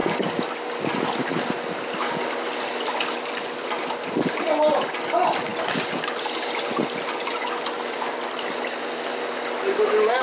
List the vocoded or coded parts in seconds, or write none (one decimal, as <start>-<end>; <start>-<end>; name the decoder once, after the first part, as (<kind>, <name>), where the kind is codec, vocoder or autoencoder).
none

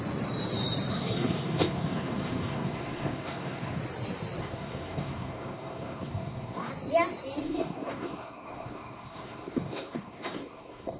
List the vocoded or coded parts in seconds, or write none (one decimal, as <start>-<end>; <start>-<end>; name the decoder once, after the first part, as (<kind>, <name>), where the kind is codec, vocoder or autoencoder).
0.9-3.8 (codec, SNAC); 4.4-6.7; 7.4-11.0

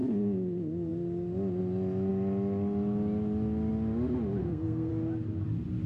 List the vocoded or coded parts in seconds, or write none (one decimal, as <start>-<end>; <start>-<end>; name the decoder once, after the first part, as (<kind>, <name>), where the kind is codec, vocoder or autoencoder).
4.4-4.9 (codec, SNAC)

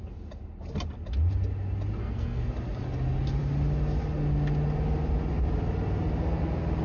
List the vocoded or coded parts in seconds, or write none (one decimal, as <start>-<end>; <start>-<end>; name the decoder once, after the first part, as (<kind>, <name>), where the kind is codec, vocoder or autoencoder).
2.0-2.5 (codec, SNAC)

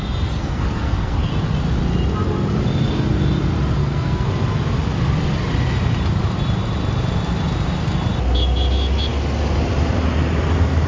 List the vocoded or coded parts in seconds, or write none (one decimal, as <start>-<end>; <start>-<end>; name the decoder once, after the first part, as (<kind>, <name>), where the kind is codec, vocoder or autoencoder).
0.4-1.3 (codec, SNAC); 3.8-4.3

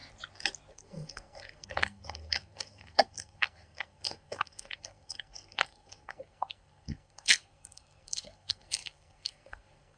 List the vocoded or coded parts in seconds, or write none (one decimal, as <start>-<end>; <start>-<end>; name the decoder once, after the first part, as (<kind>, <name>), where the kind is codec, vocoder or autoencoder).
0.7-10.0 (codec, SNAC)

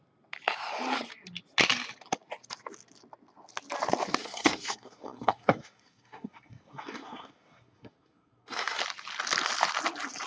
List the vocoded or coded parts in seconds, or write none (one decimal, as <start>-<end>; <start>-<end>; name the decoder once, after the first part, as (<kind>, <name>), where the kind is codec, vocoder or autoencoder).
4.2-8.8 (codec, SNAC)

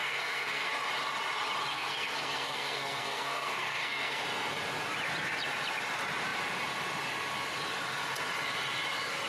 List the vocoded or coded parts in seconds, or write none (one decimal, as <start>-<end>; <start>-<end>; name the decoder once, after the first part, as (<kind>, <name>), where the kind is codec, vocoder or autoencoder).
0.0-0.7 (codec, SNAC); 1.7-4.2